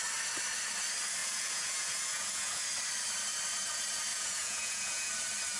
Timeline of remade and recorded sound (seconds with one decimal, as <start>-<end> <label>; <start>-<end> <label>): 0.0-1.2 recorded; 1.2-2.6 remade; 2.6-4.1 recorded; 4.1-5.1 remade; 5.1-5.6 recorded